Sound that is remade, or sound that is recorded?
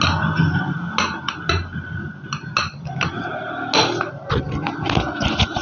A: recorded